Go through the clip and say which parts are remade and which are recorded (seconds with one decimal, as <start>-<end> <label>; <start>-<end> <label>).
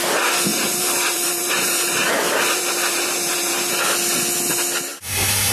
0.0-0.5 recorded; 0.5-3.8 remade; 3.8-4.9 recorded; 4.9-5.5 remade